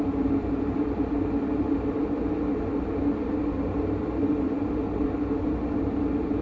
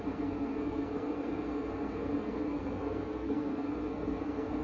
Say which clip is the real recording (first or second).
first